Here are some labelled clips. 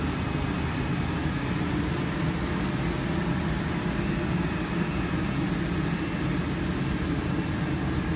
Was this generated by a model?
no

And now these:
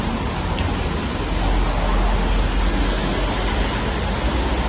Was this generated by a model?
no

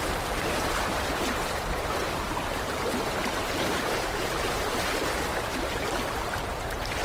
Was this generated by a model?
yes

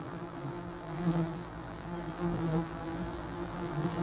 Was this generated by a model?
yes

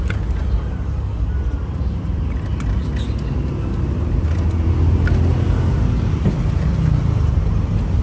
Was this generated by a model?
no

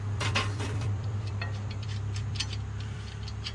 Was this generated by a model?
yes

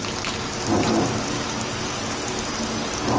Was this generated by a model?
no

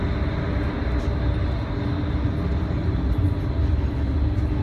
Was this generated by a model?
no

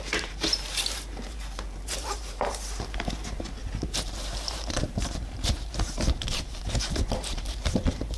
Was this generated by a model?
yes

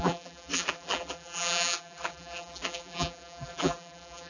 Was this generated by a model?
yes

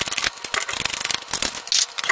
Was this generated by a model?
no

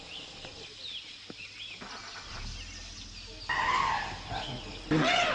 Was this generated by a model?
no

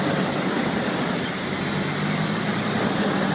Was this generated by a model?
no